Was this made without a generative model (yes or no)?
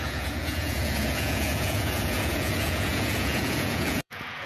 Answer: no